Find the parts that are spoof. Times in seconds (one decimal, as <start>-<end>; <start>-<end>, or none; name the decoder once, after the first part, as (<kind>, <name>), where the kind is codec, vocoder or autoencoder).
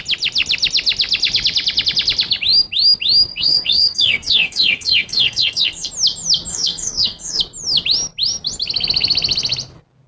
3.3-5.9 (codec, SNAC); 6.5-7.4